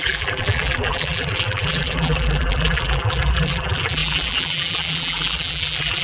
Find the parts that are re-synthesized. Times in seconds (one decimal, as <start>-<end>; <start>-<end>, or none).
0.0-6.0

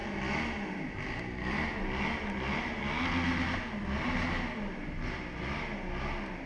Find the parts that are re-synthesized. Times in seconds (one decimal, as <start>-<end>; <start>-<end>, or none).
none